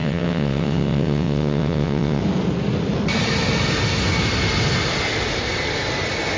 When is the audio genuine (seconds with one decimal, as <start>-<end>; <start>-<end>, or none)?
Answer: 2.2-6.4